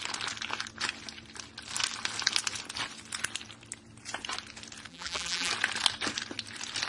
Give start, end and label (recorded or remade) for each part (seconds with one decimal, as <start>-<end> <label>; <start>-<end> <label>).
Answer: 0.0-4.9 recorded; 4.9-5.5 remade; 5.5-6.9 recorded